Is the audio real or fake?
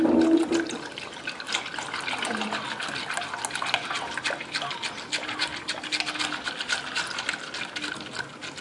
real